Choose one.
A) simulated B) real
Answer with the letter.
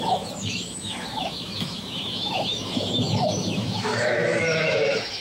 A